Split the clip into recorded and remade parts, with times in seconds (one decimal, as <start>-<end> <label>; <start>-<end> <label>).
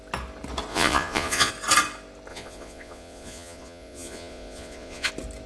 0.0-0.7 recorded; 0.7-1.5 remade; 1.5-2.3 recorded; 2.3-5.1 remade; 5.1-5.5 recorded